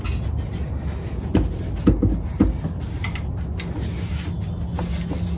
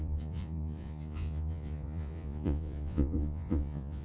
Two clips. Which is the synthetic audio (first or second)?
second